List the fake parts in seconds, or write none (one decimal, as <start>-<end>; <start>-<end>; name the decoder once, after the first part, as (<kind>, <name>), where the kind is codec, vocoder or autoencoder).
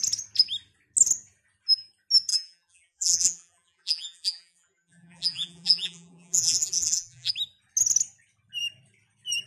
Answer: 2.3-7.3 (vocoder, BigVGAN v2)